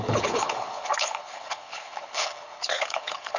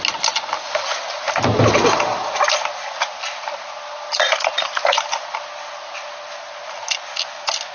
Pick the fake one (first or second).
first